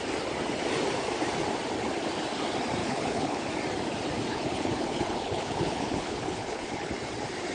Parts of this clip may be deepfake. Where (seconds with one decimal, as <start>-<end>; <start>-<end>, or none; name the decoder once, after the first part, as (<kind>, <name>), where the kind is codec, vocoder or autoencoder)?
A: 2.8-3.5 (codec, HILCodec); 4.3-6.9